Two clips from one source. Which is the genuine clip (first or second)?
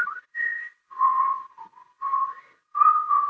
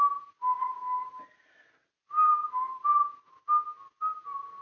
second